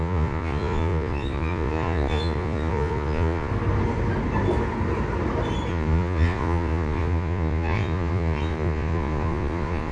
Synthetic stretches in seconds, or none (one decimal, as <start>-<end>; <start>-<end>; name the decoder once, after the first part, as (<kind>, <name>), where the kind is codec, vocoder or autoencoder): 0.0-3.5 (vocoder, Vocos); 5.7-9.9